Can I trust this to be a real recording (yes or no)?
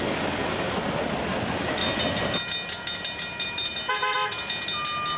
yes